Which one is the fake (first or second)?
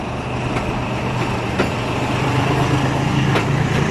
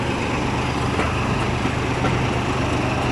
first